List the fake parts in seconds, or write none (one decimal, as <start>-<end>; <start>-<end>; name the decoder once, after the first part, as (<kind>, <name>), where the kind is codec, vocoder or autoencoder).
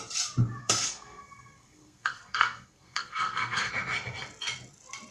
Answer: 0.6-3.7 (codec, SNAC)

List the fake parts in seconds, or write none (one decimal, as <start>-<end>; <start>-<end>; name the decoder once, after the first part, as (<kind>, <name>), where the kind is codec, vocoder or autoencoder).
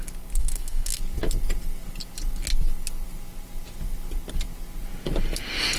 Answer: 0.4-1.0 (codec, SNAC)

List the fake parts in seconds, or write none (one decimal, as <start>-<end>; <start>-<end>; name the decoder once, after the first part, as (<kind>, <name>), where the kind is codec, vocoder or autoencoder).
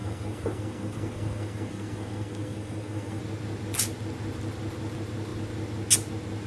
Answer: 0.0-3.2 (codec, SNAC)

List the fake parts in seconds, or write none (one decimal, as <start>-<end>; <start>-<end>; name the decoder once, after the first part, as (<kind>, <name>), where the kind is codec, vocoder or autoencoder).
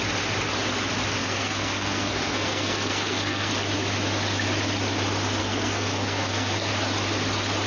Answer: 1.2-3.5 (codec, SNAC); 5.4-6.7